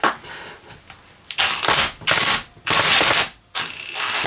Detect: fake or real real